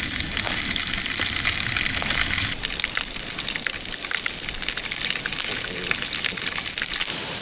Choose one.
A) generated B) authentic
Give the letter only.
B